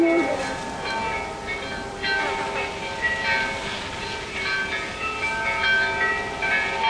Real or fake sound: real